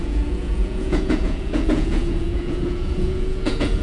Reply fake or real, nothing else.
fake